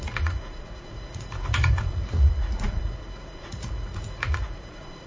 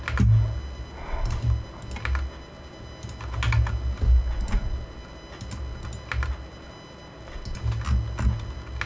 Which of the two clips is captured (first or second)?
second